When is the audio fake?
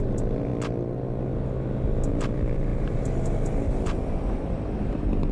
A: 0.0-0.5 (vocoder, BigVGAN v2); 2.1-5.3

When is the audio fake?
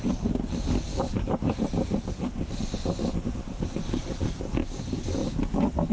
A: 0.0-2.8 (vocoder, BigVGAN v2); 4.4-5.2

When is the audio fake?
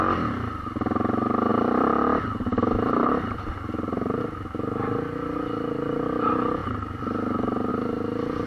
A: 1.5-4.2 (vocoder, BigVGAN v2)